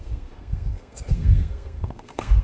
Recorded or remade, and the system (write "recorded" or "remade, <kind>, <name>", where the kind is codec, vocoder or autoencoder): remade, codec, SNAC